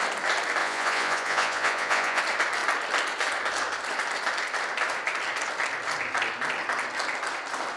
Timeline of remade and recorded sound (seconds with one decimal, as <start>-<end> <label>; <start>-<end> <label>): 0.0-0.6 recorded; 0.6-2.2 remade; 2.2-7.8 recorded